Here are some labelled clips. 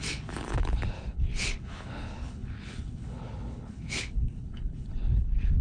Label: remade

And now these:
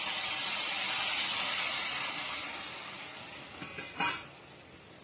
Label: recorded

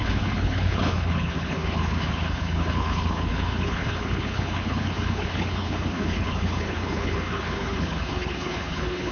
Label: remade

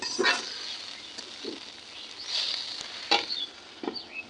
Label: recorded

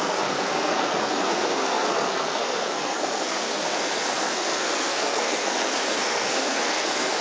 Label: remade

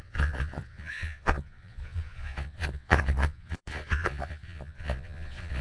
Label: remade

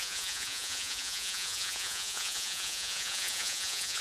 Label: remade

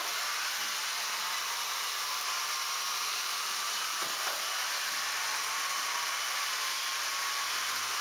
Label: remade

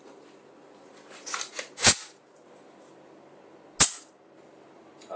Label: recorded